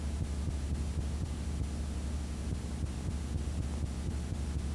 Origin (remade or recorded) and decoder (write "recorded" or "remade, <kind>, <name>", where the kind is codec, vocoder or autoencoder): recorded